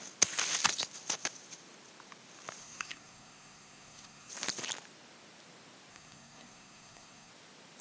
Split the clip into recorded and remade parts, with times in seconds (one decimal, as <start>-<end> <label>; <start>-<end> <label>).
0.0-2.6 recorded; 2.6-4.3 remade; 4.3-5.9 recorded; 5.9-7.3 remade; 7.3-7.8 recorded